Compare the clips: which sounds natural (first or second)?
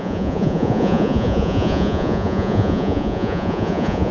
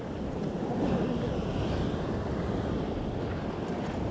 second